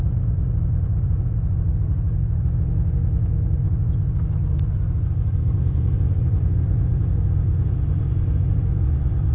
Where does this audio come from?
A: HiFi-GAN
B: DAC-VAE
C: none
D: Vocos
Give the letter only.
D